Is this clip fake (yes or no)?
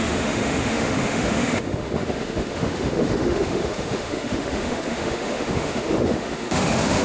yes